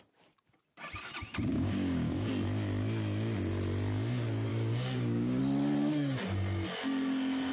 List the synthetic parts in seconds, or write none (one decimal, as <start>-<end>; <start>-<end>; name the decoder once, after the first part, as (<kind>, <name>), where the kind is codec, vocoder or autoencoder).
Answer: 1.5-2.3 (codec, DAC); 4.5-5.4